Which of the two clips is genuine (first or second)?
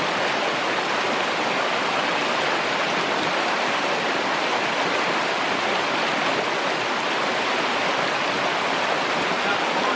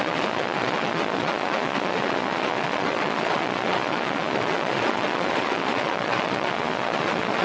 first